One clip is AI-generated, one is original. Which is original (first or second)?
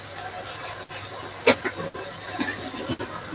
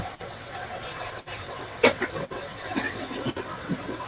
first